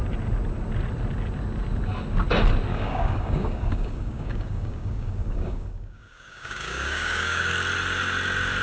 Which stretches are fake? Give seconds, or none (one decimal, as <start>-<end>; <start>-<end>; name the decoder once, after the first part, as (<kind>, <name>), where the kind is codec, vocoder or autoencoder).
2.7-7.5 (codec, DAC)